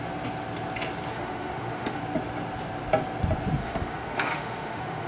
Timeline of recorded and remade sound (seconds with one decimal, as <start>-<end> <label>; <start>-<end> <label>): 0.0-1.1 recorded; 1.1-2.0 remade; 2.0-3.6 recorded; 3.6-5.1 remade